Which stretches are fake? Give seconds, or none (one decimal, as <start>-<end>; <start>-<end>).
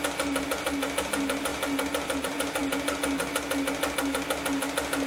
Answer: none